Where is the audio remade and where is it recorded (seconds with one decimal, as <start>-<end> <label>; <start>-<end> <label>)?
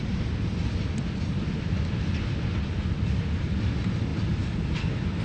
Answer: 0.0-5.2 recorded